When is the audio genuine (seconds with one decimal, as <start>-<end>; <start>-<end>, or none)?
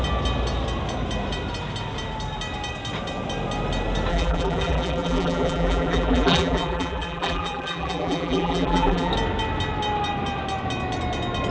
0.0-4.1; 9.1-11.5